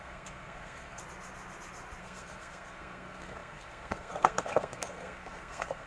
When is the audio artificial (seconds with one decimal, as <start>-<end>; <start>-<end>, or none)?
0.0-1.0; 2.0-5.9

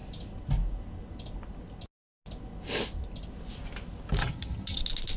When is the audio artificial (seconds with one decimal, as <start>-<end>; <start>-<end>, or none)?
4.2-4.8

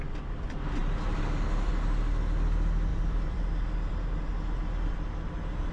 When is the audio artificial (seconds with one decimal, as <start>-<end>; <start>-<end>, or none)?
2.9-4.3

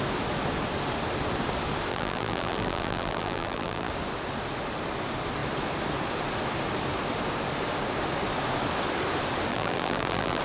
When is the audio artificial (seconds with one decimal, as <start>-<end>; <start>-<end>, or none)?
1.9-3.9; 9.5-10.4

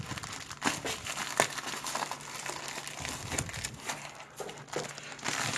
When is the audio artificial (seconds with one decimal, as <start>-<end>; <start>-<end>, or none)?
none

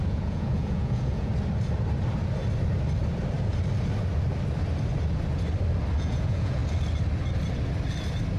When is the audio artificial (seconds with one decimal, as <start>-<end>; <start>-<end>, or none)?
0.0-1.3; 6.0-6.6